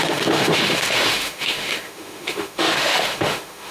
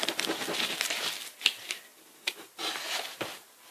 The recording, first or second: second